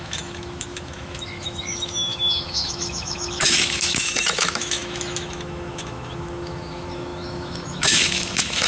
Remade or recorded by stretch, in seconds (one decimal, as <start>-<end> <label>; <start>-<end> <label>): 0.0-8.7 remade